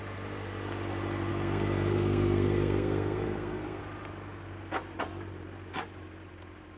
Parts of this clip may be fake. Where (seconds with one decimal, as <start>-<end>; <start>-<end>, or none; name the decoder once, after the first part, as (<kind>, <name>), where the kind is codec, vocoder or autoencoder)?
1.3-3.8 (codec, SNAC)